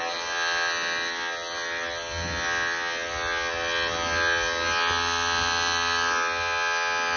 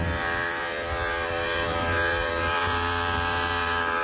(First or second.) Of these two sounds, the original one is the first